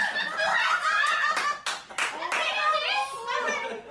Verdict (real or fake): real